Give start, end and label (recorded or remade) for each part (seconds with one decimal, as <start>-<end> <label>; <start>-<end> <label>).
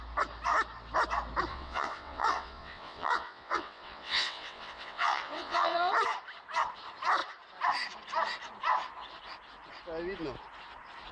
0.0-1.5 recorded; 1.5-5.9 remade; 5.9-11.1 recorded